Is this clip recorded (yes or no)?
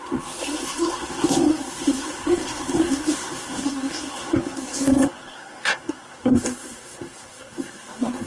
no